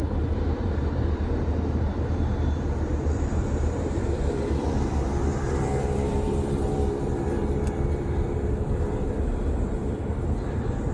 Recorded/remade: remade